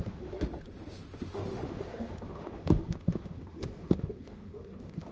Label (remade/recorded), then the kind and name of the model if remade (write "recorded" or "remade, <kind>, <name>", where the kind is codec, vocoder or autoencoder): remade, autoencoder, DAC-VAE